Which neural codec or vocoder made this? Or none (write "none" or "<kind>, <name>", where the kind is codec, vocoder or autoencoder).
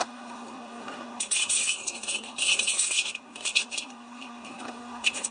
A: codec, SNAC